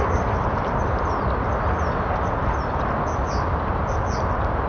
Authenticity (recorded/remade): recorded